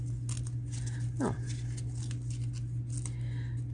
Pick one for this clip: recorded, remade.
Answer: recorded